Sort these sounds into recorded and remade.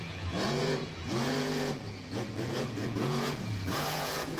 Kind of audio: remade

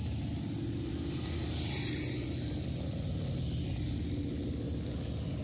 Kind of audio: recorded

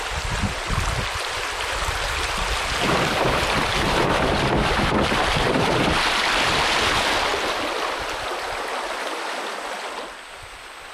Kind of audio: recorded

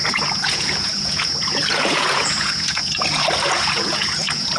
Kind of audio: remade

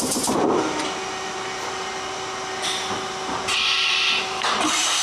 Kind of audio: recorded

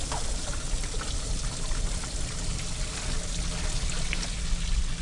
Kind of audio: recorded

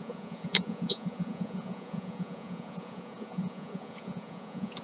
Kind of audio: remade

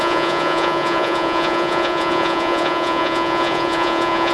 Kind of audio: remade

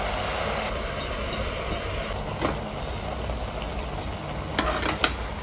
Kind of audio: recorded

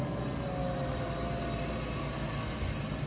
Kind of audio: recorded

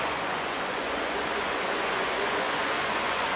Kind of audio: remade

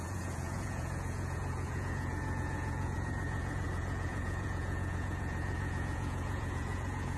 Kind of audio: remade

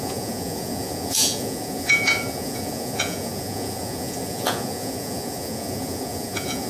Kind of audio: remade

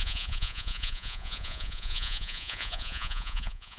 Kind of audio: remade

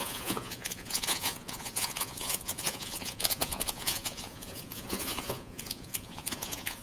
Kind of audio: remade